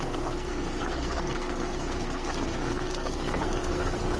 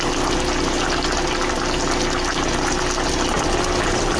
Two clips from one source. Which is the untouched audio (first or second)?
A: second